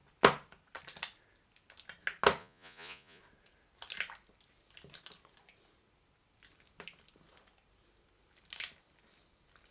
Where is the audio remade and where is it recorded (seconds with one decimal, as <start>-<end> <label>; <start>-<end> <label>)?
0.0-2.4 recorded; 2.4-3.2 remade; 3.2-9.7 recorded